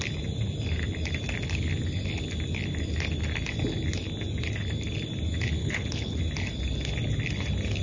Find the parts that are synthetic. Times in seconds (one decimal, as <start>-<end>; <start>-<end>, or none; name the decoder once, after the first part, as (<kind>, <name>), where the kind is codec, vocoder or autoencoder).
5.6-6.2 (codec, HILCodec)